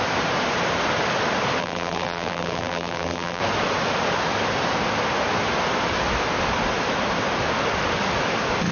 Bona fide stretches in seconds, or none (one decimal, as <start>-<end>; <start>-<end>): 0.0-1.6; 3.4-8.7